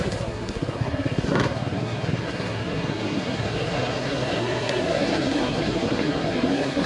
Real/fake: fake